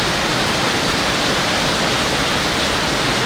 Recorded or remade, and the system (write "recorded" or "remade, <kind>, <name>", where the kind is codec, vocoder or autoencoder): recorded